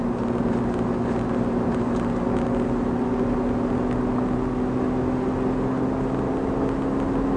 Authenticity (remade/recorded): recorded